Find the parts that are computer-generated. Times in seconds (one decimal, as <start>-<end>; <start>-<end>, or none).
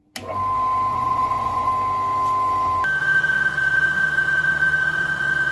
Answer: 0.9-1.7; 3.0-5.5